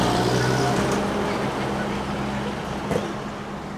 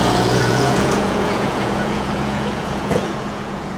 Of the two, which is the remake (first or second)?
second